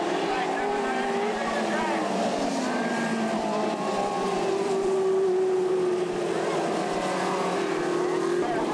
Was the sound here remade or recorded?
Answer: remade